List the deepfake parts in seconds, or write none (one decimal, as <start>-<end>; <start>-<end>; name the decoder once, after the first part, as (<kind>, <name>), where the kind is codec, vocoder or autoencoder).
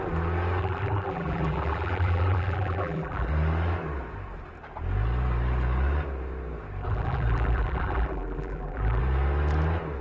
0.6-3.3 (vocoder, BigVGAN v2); 6.8-9.0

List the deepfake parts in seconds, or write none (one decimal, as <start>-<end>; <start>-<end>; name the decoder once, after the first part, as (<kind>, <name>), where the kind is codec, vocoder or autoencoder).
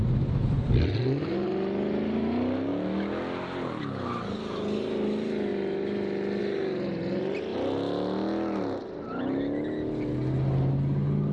0.4-0.9 (vocoder, BigVGAN v2)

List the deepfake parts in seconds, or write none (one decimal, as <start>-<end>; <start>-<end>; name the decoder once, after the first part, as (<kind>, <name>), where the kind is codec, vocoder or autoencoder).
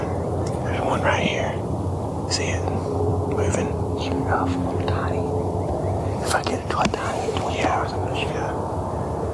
3.1-4.4 (vocoder, BigVGAN v2); 6.5-7.2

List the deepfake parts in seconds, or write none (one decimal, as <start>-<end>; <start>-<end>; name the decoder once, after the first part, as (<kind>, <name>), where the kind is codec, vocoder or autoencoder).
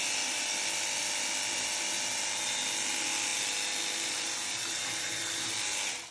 none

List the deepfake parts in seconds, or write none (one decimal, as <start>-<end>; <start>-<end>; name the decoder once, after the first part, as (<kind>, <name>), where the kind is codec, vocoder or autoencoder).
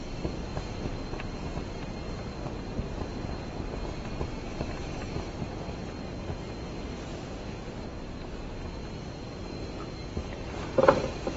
none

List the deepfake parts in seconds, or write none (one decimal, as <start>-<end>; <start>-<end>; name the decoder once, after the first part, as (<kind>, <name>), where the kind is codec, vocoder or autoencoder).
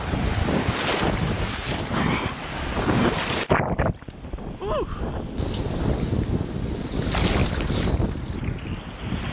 0.8-2.2 (vocoder, BigVGAN v2); 7.4-8.0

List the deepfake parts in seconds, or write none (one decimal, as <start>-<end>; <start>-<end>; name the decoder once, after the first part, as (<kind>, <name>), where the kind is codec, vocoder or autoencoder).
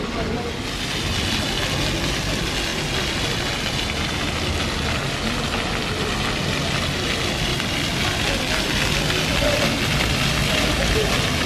9.3-11.0 (vocoder, BigVGAN v2)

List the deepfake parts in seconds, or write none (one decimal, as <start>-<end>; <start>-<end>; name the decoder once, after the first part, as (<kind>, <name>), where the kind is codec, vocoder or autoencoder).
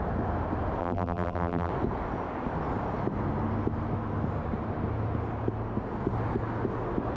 0.8-1.7 (vocoder, BigVGAN v2)